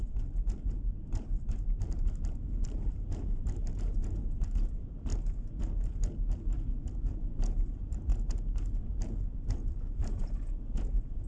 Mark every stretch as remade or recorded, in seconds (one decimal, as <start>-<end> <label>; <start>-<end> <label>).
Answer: 0.0-5.1 remade; 5.1-6.5 recorded; 6.5-8.1 remade; 8.1-9.2 recorded; 9.2-11.3 remade